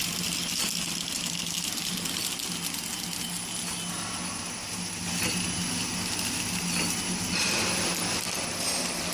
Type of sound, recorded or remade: recorded